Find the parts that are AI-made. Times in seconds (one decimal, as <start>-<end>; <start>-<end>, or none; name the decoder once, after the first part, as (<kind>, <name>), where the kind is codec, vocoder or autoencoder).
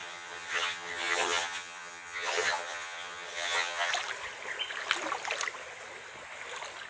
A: 0.0-3.9 (vocoder, HiFi-GAN)